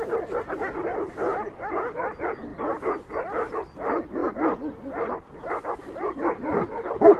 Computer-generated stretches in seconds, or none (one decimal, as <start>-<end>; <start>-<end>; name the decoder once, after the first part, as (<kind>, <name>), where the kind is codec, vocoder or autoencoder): none